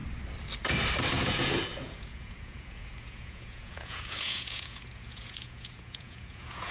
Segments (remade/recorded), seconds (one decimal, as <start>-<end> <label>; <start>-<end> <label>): 0.0-1.2 recorded; 1.2-6.7 remade